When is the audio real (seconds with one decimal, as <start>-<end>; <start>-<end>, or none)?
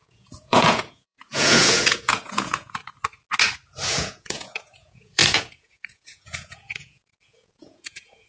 2.8-3.9